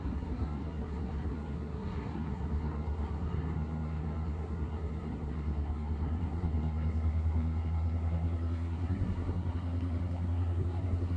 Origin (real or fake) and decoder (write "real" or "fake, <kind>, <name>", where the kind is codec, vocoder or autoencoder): fake, codec, SNAC